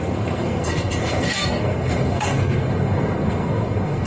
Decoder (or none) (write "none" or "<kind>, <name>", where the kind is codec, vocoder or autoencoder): codec, SNAC